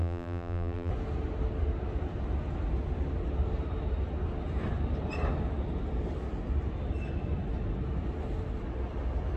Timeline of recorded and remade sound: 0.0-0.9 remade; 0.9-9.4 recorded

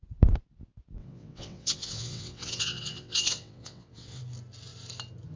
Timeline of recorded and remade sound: 0.0-1.0 recorded; 1.0-4.2 remade; 4.2-5.4 recorded